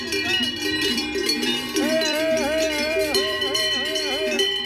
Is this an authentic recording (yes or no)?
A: no